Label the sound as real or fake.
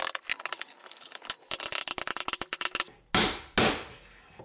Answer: real